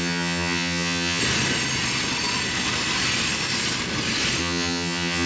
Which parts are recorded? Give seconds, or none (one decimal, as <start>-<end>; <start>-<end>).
1.2-4.4